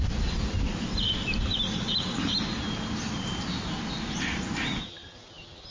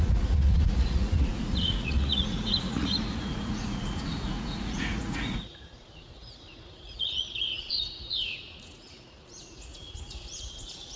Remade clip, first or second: second